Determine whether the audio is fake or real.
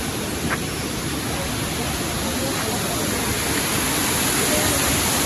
real